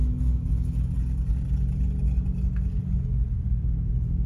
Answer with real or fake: real